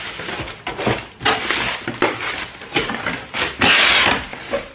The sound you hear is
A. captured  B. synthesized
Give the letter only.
A